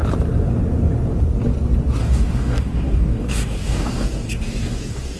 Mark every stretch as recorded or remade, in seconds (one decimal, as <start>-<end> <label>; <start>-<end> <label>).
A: 0.0-2.0 recorded; 2.0-5.2 remade